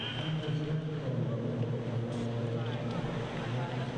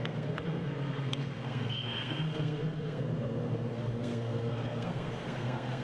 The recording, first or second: first